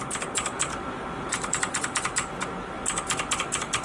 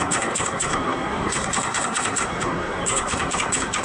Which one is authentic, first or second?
first